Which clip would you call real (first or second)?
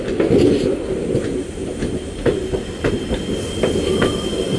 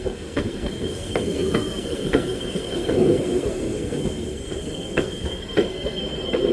first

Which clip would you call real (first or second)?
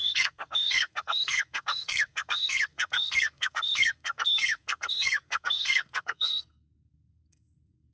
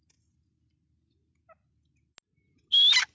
second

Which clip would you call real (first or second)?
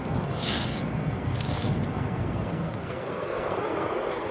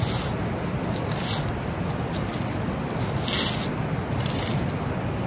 second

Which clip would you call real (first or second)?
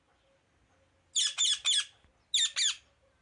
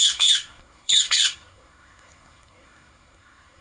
first